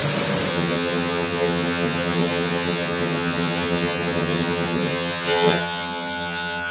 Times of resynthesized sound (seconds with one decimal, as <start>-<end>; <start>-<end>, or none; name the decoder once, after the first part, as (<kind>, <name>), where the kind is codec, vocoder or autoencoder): 0.5-6.7 (vocoder, HiFi-GAN)